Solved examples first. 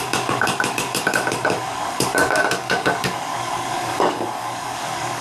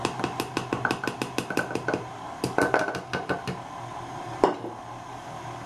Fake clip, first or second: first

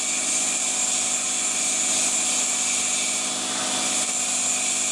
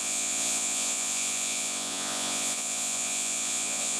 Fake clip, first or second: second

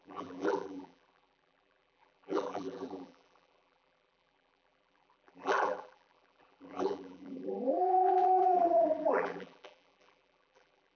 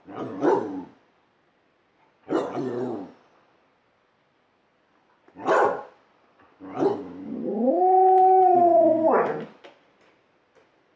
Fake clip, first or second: first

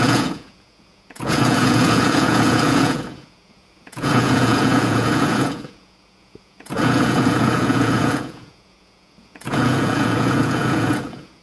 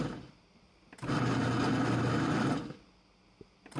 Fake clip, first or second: first